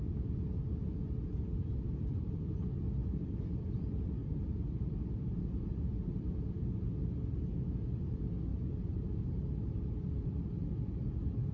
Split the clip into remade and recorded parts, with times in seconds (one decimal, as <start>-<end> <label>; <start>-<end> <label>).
0.0-1.5 recorded; 1.5-2.5 remade; 2.5-3.0 recorded; 3.0-3.8 remade; 3.8-4.2 recorded; 4.2-5.4 remade; 5.4-8.5 recorded; 8.5-9.4 remade; 9.4-11.5 recorded